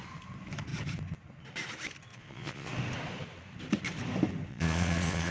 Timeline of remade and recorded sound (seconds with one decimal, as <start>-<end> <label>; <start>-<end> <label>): 0.0-2.1 recorded; 2.1-2.7 remade; 2.7-4.5 recorded; 4.5-5.3 remade